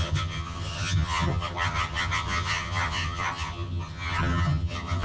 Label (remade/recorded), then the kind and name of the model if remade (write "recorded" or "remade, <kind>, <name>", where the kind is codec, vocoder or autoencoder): remade, vocoder, HiFi-GAN